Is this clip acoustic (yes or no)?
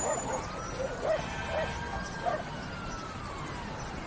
yes